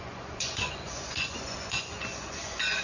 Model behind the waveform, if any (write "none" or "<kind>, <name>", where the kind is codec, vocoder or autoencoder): vocoder, Vocos